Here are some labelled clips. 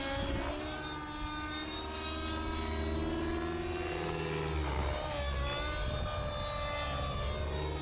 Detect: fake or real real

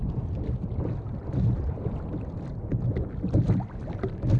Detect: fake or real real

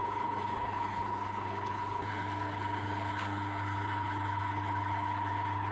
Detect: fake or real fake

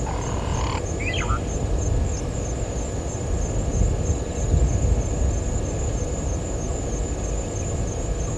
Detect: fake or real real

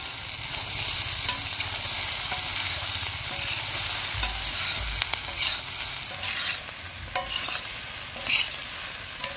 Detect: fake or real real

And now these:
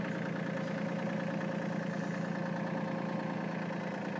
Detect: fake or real real